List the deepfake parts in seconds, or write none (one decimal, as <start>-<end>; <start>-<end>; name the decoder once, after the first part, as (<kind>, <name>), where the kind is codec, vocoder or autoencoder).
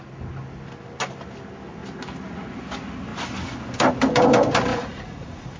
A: 4.7-5.6 (vocoder, Vocos)